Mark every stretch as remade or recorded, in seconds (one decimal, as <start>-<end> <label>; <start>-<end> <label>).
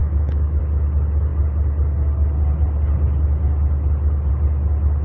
0.0-0.6 remade; 0.6-5.0 recorded